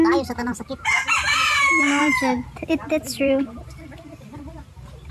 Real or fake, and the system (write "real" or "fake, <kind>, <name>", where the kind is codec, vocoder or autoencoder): fake, vocoder, BigVGAN v2